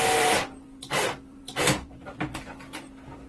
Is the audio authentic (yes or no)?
no